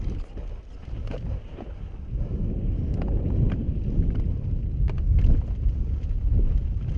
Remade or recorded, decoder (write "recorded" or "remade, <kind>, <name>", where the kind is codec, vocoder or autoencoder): recorded